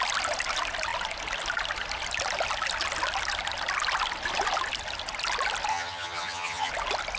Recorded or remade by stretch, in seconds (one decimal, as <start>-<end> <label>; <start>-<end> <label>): 0.0-5.7 recorded; 5.7-6.7 remade; 6.7-7.2 recorded